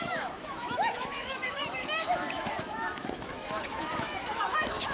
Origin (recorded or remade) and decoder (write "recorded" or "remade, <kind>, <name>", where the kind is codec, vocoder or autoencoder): remade, autoencoder, DAC-VAE